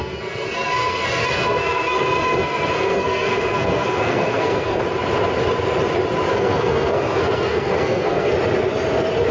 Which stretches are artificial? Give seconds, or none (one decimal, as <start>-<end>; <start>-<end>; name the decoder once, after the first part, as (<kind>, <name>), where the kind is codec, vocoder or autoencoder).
0.0-4.8 (codec, SNAC); 6.3-8.3